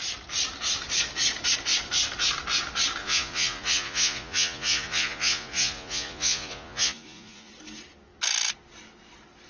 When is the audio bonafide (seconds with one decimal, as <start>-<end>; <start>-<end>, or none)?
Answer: 0.0-3.0; 7.5-9.5